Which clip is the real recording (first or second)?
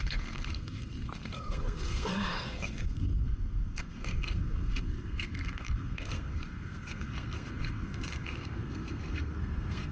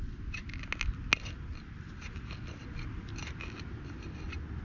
second